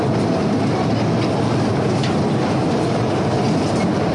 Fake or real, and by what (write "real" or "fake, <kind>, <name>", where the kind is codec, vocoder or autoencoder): real